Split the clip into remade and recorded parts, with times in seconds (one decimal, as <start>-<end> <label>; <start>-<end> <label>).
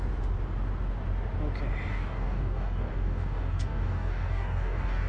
0.0-1.9 recorded; 1.9-5.1 remade